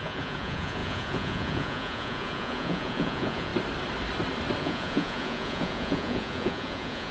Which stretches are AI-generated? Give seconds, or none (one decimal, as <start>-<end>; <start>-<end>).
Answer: 0.0-3.5; 4.6-7.1